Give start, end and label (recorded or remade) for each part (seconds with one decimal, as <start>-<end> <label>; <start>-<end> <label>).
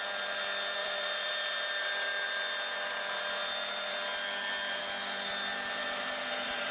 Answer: 0.0-0.8 recorded; 0.8-1.9 remade; 1.9-5.8 recorded; 5.8-6.7 remade